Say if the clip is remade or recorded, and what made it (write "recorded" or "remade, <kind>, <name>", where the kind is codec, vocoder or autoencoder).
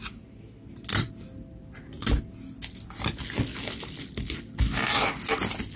recorded